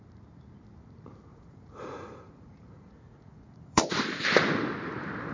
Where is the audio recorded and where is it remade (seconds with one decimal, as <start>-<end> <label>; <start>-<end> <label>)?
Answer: 0.0-1.3 recorded; 1.3-3.9 remade; 3.9-5.3 recorded